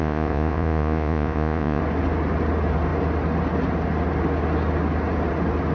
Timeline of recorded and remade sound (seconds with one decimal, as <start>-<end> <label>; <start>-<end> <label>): 0.0-1.8 remade; 1.8-5.7 recorded